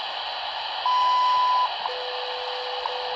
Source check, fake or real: real